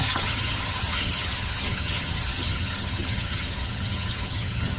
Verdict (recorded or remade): remade